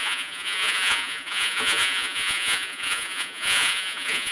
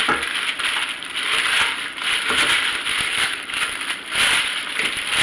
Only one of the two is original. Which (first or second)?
second